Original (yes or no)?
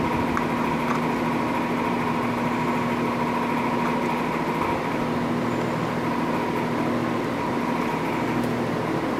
yes